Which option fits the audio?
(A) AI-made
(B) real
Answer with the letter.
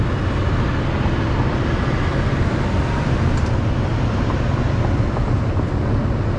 B